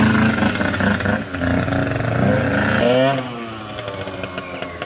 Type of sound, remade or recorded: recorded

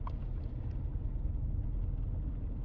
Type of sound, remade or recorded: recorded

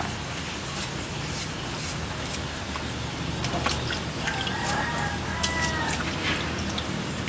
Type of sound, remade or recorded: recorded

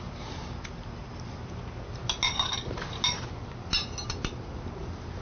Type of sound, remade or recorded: recorded